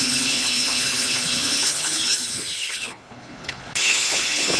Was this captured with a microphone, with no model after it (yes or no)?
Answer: no